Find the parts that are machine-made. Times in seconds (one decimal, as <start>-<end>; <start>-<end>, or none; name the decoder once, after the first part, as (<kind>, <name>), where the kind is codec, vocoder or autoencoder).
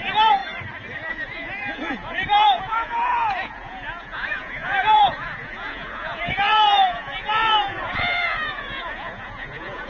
0.0-0.4 (vocoder, Vocos); 1.1-9.9